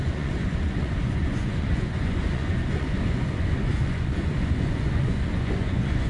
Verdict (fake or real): fake